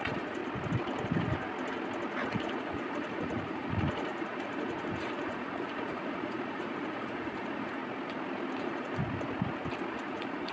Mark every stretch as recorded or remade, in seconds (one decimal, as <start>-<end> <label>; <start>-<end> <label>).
0.0-0.4 remade; 0.4-2.2 recorded; 2.2-7.8 remade; 7.8-8.6 recorded; 8.6-9.0 remade; 9.0-9.9 recorded; 9.9-10.5 remade